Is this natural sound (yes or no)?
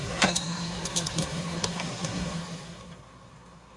no